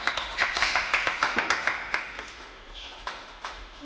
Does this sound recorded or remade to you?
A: remade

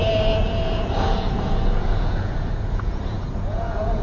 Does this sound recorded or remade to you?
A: remade